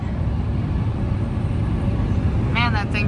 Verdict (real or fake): fake